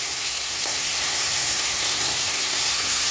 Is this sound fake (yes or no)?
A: yes